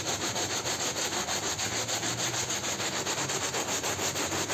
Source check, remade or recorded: recorded